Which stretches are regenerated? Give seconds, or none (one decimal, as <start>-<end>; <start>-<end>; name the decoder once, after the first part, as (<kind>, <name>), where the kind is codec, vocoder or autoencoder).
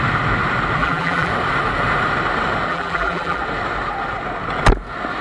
0.8-1.3 (vocoder, BigVGAN v2); 2.7-3.4